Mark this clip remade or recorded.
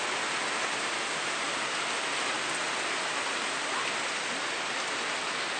recorded